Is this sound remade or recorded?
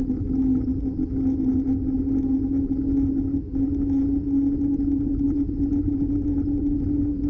recorded